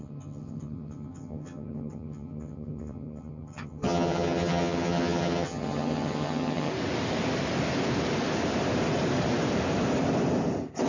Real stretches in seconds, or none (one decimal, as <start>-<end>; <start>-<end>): 6.7-10.9